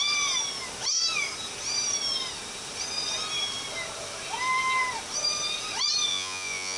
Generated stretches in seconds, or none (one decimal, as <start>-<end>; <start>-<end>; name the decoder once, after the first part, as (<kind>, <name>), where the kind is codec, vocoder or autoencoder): 6.1-6.8 (vocoder, Vocos)